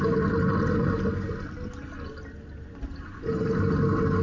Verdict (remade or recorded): recorded